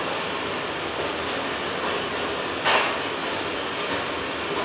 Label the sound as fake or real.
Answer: real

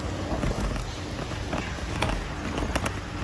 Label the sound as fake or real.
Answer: real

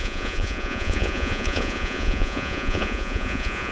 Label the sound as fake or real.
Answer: fake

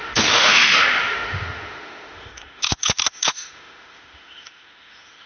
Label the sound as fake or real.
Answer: fake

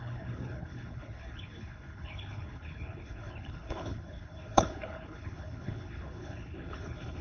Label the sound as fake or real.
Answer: fake